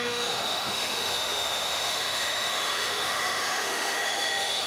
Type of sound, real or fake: fake